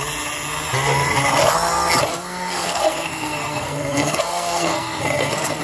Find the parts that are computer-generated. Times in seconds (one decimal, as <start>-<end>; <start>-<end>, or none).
2.1-5.6